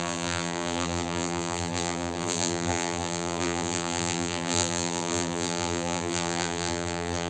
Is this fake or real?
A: fake